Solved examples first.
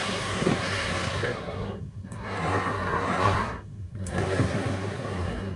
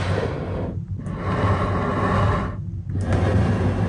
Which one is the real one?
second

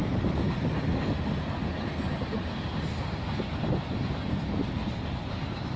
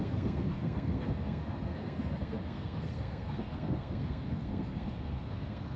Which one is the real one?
first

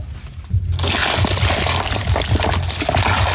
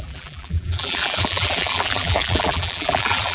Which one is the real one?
first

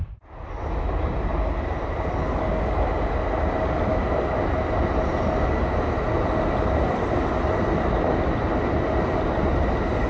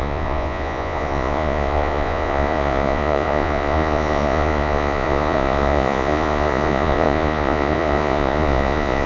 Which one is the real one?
first